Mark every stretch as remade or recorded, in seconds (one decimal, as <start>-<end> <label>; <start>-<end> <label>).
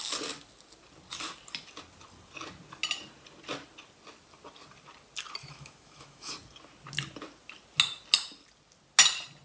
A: 0.0-5.4 recorded; 5.4-6.3 remade; 6.3-9.4 recorded